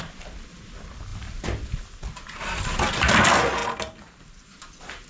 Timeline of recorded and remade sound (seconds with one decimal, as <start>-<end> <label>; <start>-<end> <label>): 0.0-5.1 recorded